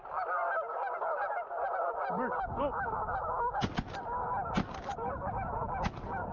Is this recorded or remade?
recorded